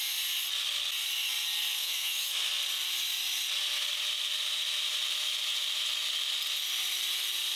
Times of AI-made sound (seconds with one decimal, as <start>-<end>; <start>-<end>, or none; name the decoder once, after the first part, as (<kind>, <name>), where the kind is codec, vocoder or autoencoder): 1.8-2.5 (autoencoder, DAC-VAE)